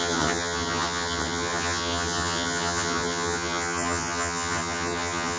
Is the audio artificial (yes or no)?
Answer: yes